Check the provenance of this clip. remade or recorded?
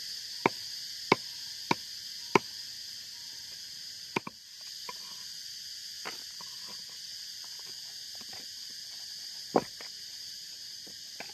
recorded